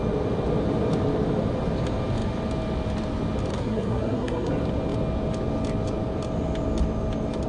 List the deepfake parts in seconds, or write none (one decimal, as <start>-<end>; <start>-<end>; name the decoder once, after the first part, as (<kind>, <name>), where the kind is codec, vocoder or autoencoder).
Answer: 3.5-4.5 (codec, SNAC)